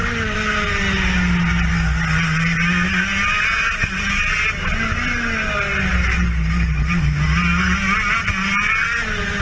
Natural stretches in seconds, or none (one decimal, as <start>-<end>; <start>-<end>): 0.0-9.4